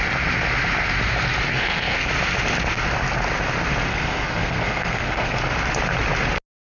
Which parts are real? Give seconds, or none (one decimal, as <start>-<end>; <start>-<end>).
0.0-1.5; 2.1-3.9; 5.4-6.6